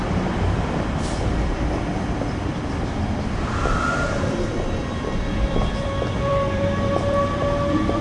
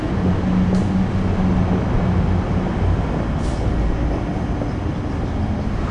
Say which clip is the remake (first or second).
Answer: first